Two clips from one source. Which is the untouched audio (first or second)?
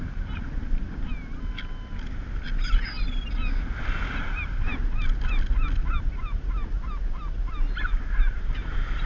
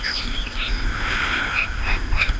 first